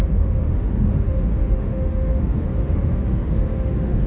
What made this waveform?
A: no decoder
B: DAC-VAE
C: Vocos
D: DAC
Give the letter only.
B